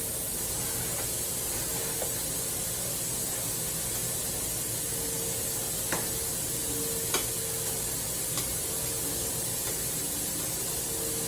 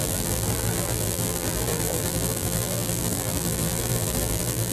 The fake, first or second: second